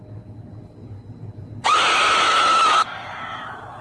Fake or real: real